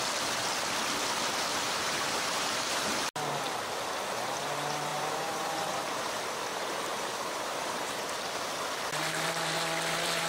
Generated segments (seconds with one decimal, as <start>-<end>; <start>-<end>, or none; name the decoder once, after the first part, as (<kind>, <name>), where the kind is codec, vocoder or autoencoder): 1.5-3.1 (vocoder, BigVGAN v2); 4.9-6.1; 6.5-8.1